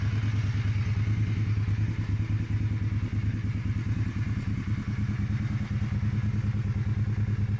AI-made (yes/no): no